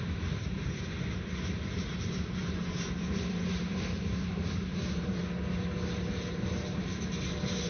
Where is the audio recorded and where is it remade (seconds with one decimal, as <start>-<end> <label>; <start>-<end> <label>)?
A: 0.0-5.2 remade; 5.2-6.3 recorded; 6.3-7.7 remade